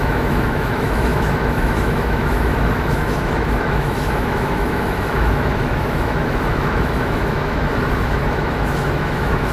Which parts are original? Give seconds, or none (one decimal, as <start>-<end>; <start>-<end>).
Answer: none